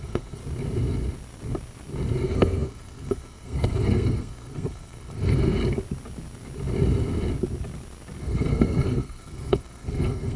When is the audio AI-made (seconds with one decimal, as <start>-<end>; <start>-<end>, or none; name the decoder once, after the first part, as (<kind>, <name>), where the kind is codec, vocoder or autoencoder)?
0.0-0.4 (codec, SNAC); 2.2-5.6; 8.2-10.4